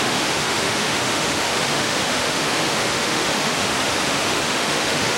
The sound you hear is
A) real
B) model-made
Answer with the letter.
B